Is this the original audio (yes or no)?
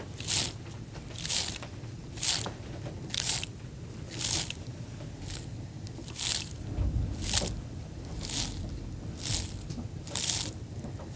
yes